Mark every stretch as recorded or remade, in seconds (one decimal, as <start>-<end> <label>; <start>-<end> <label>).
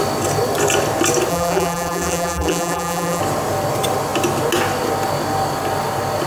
0.0-1.3 recorded; 1.3-3.2 remade; 3.2-6.3 recorded